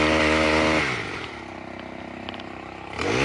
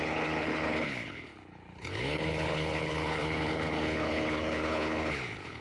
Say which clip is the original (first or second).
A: first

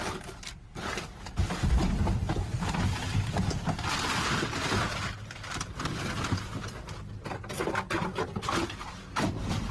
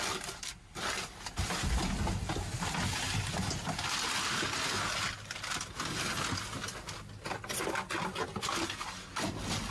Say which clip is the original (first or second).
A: second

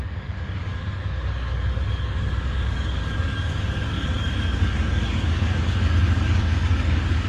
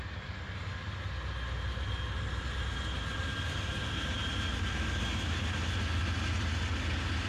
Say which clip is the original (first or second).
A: second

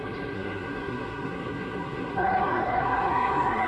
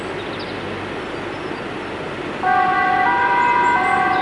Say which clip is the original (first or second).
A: second